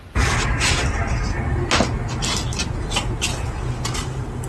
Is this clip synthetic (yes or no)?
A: no